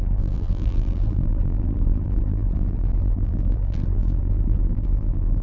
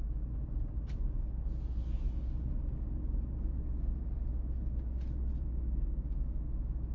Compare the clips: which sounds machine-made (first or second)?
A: first